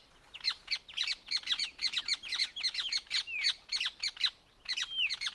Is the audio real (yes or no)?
yes